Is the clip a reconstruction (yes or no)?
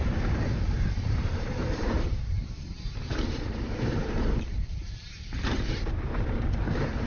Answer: yes